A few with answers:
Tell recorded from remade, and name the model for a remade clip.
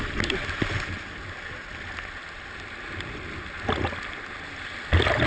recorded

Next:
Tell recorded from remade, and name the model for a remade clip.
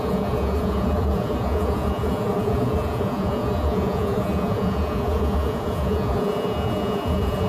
remade, vocoder, Vocos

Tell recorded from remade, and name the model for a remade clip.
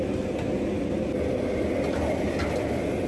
recorded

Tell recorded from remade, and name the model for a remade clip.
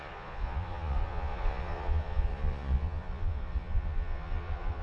remade, vocoder, Vocos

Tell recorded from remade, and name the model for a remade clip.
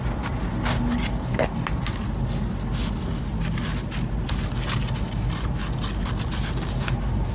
recorded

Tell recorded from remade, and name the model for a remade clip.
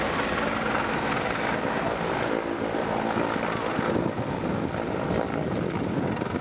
recorded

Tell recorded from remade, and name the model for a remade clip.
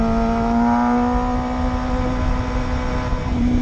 recorded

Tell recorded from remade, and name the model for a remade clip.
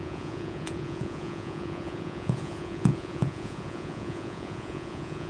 remade, vocoder, Vocos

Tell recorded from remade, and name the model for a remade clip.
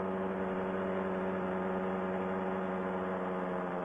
recorded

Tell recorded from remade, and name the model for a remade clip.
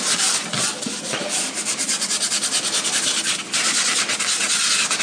recorded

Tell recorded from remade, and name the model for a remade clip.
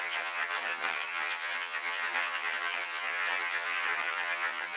remade, vocoder, HiFi-GAN